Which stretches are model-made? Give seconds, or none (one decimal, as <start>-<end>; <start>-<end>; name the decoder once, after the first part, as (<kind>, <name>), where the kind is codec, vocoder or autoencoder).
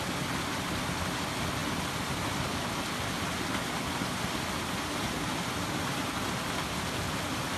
none